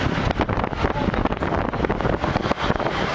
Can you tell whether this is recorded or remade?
recorded